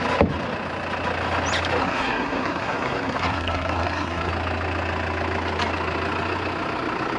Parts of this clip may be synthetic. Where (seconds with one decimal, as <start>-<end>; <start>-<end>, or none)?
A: 1.8-4.3